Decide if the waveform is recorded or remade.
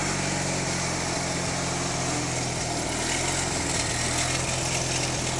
recorded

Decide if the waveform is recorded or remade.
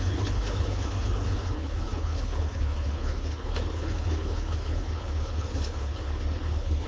remade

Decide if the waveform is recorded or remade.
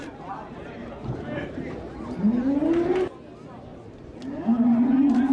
recorded